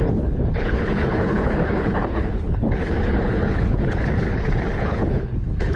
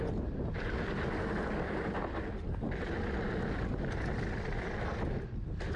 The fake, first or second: first